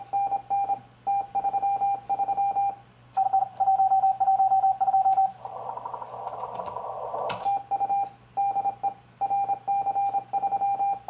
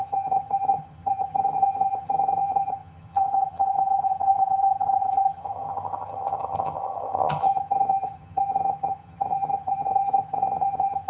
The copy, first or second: second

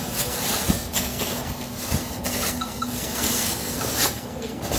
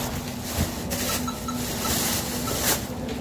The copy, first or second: first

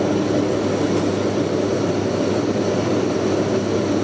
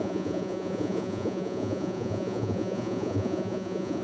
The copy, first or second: second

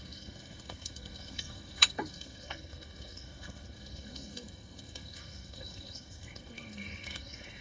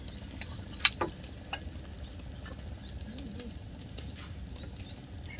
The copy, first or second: first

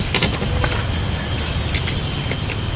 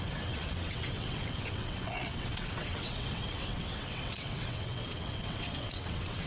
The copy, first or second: second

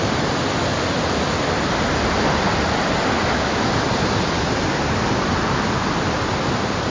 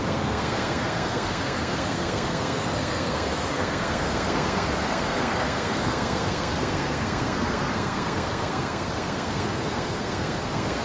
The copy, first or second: second